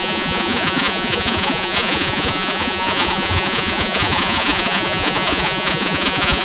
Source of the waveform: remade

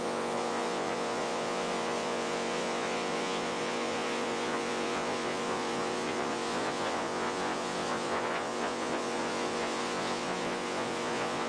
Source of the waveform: remade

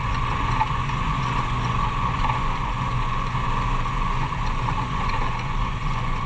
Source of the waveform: remade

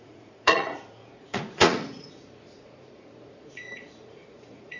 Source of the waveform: remade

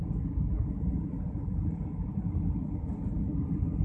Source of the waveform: recorded